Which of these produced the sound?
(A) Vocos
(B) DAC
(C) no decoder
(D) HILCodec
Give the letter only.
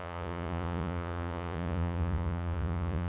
A